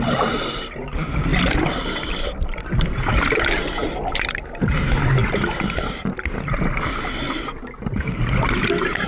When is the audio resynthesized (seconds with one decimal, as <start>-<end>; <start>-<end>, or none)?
1.3-3.1; 3.8-4.3